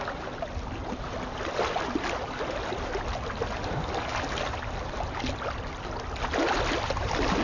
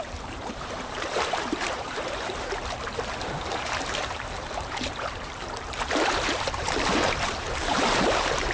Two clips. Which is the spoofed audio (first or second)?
second